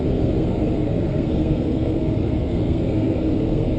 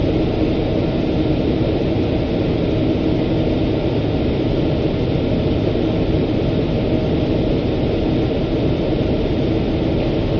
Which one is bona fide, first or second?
second